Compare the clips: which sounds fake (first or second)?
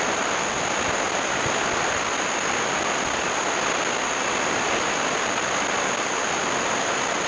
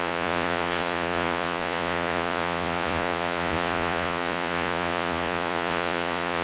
second